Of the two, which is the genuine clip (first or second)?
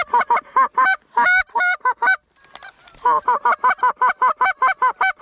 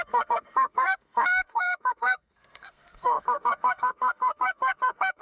first